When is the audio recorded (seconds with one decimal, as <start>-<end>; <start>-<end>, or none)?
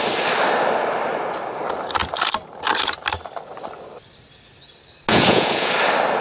0.0-5.1; 5.7-6.2